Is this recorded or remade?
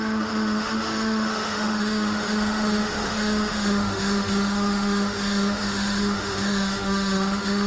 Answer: remade